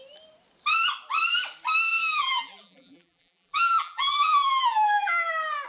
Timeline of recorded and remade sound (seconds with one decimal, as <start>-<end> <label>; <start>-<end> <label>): 0.0-1.9 recorded; 1.9-5.3 remade; 5.3-5.7 recorded